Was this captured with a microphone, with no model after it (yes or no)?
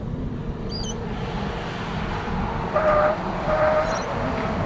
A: yes